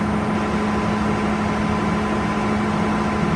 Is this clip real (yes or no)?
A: yes